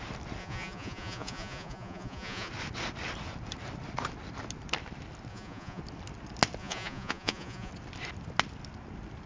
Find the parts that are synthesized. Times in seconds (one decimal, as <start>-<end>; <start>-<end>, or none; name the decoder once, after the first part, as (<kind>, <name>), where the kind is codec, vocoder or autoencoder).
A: 0.4-2.5 (vocoder, Vocos); 5.3-5.8; 6.6-7.7